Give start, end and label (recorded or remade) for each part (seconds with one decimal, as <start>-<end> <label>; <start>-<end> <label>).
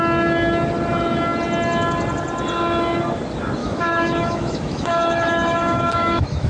0.0-3.6 recorded; 3.6-6.5 remade